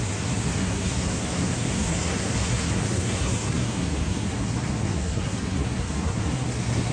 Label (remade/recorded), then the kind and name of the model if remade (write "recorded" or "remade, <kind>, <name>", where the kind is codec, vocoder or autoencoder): remade, codec, SNAC